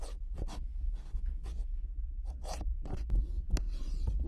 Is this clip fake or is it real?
real